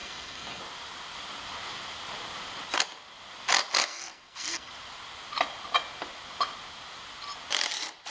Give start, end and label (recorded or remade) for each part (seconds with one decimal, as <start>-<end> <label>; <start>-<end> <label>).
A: 0.0-0.6 remade; 0.6-3.8 recorded; 3.8-4.7 remade; 4.7-8.1 recorded